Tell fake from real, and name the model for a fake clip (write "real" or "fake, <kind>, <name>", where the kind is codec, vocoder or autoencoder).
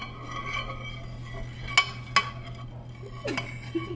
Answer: real